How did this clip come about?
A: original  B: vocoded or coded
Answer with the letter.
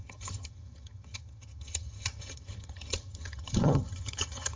B